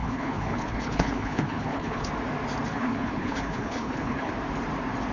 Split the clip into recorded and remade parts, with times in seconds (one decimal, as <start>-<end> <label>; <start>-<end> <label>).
0.0-2.1 remade; 2.1-2.7 recorded; 2.7-4.3 remade; 4.3-5.1 recorded